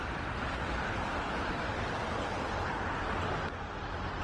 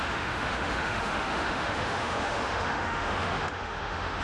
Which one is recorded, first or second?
first